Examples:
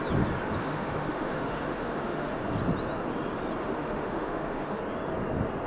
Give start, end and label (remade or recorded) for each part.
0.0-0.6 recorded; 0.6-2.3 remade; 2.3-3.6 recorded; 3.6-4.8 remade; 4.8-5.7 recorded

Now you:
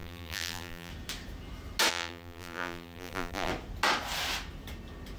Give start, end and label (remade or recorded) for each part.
0.0-0.9 remade; 0.9-1.9 recorded; 1.9-3.5 remade; 3.5-5.2 recorded

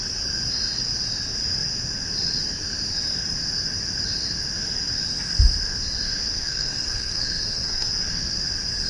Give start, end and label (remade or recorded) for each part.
0.0-6.3 recorded; 6.3-7.9 remade; 7.9-8.9 recorded

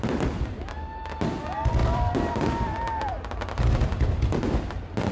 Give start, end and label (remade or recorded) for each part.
0.0-1.8 recorded; 1.8-3.6 remade; 3.6-5.1 recorded

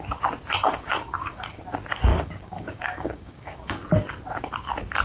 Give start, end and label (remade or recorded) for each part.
0.0-0.5 recorded; 0.5-1.6 remade; 1.6-2.1 recorded; 2.1-3.7 remade; 3.7-5.0 recorded

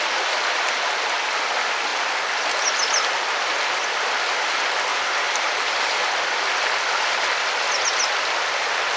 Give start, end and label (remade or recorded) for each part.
0.0-4.9 recorded; 4.9-6.0 remade; 6.0-9.0 recorded

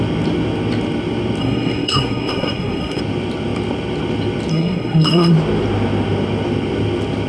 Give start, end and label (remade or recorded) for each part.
0.0-1.4 recorded; 1.4-3.0 remade; 3.0-4.5 recorded; 4.5-5.3 remade; 5.3-7.3 recorded

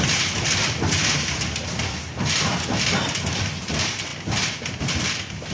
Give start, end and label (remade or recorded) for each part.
0.0-5.5 recorded